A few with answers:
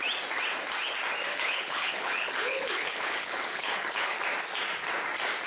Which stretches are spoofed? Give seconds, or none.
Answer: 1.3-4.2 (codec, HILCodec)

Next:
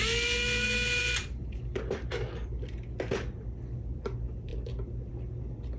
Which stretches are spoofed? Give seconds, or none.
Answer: 1.0-2.3 (vocoder, BigVGAN v2)

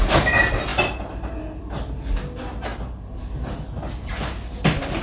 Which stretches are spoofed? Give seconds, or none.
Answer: none

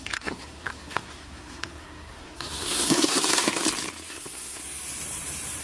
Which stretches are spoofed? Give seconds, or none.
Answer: 0.0-3.6 (codec, SNAC); 4.1-4.6

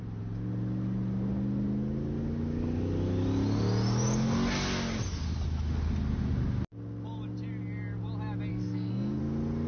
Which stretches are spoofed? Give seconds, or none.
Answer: 8.5-9.2 (codec, SNAC)

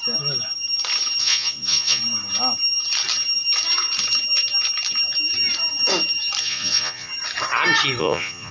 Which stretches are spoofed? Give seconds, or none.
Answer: 1.2-2.0 (vocoder, Vocos); 6.4-7.1; 8.0-8.5

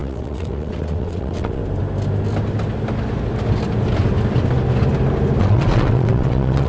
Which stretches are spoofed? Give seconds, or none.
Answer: 0.0-1.6 (vocoder, WaveNeXt); 5.4-6.7

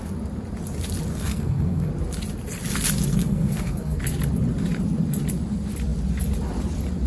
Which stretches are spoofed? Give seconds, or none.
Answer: 1.1-1.9 (codec, SNAC); 3.1-4.0